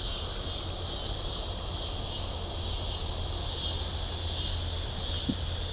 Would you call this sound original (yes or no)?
yes